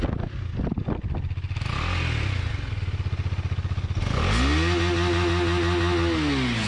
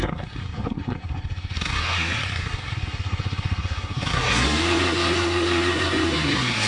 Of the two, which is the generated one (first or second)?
second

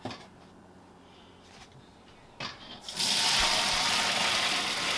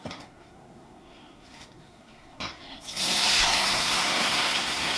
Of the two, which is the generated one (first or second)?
second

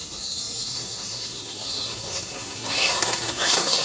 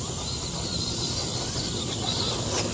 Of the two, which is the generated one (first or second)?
first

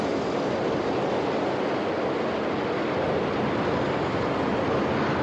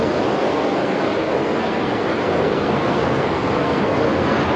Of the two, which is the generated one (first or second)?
second